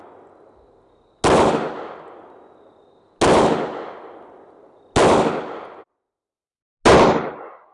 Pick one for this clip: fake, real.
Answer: real